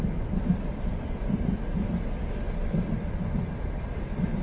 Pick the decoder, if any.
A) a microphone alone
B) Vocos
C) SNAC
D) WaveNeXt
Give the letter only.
A